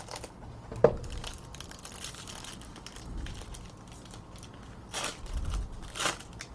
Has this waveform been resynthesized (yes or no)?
no